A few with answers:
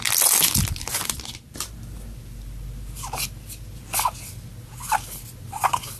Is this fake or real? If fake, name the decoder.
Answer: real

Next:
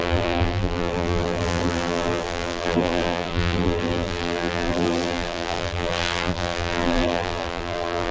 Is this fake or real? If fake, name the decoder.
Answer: fake, vocoder, BigVGAN v2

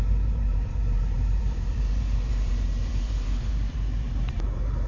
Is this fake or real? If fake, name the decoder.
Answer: fake, vocoder, BigVGAN v2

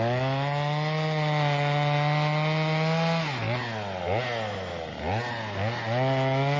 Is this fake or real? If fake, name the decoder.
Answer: real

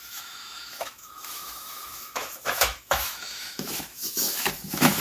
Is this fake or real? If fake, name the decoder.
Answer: fake, autoencoder, DAC-VAE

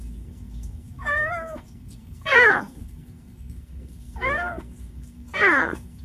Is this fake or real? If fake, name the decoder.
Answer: fake, codec, SNAC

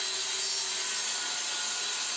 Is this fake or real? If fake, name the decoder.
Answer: real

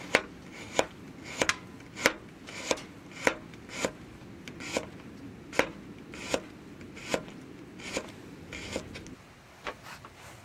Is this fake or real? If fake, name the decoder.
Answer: real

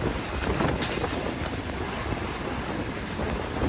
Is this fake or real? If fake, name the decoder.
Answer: real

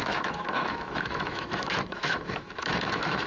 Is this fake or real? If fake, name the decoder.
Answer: fake, autoencoder, DAC-VAE